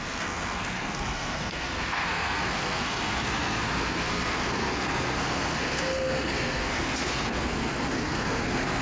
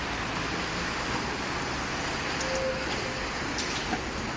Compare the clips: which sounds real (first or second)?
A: second